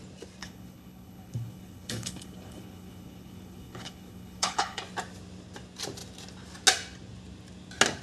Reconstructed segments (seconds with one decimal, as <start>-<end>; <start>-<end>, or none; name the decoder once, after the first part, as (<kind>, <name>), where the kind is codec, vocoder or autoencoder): 0.4-4.8 (codec, HILCodec)